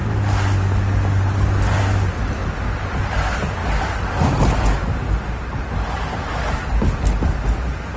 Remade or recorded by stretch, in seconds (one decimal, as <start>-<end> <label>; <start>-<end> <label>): 0.0-8.0 recorded